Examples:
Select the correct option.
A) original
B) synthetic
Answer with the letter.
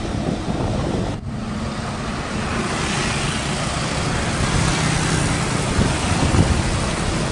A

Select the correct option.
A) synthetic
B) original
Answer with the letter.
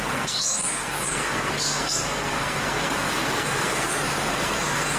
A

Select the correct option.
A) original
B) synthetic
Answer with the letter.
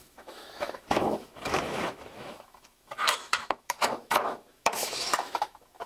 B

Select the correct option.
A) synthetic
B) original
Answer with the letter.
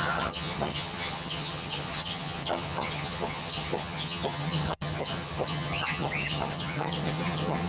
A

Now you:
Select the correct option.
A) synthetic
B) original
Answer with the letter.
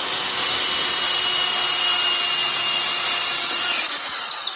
B